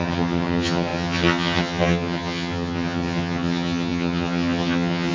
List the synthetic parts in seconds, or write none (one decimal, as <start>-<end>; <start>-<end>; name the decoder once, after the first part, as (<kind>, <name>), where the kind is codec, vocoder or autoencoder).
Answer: 0.0-5.1 (vocoder, HiFi-GAN)